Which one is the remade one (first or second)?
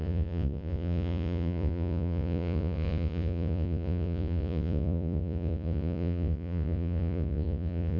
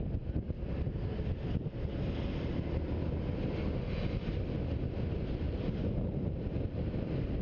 first